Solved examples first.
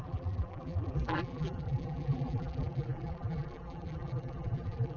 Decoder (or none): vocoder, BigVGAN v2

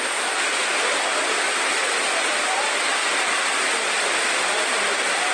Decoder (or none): none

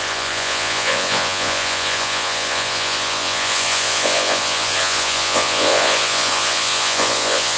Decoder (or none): vocoder, Vocos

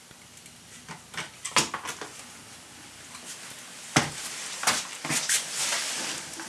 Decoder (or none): none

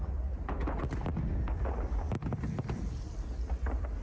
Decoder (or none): none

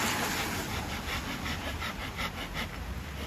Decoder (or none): none